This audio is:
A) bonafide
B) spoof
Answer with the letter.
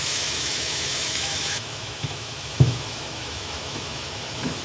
B